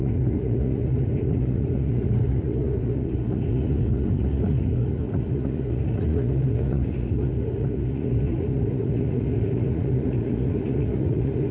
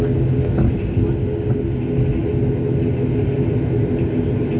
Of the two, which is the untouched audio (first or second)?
second